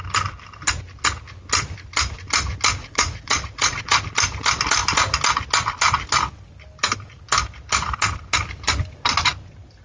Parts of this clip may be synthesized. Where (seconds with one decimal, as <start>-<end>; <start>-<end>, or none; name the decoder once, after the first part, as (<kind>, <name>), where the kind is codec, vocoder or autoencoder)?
2.8-4.0 (vocoder, Vocos)